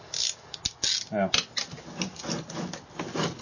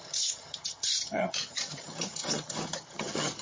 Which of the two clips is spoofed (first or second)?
second